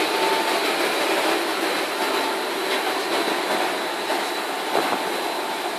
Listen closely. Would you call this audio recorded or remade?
recorded